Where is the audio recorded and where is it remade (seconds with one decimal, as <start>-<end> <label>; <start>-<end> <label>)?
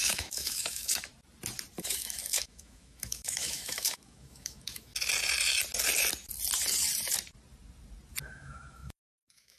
0.0-1.1 remade; 1.1-1.8 recorded; 1.8-4.9 remade; 4.9-8.2 recorded; 8.2-9.6 remade